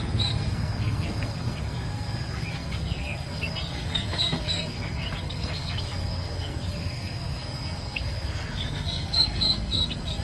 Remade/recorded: remade